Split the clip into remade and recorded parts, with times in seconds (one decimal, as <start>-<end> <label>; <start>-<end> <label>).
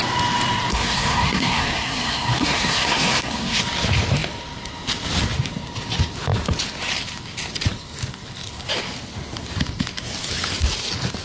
0.0-0.7 recorded; 0.7-3.6 remade; 3.6-11.2 recorded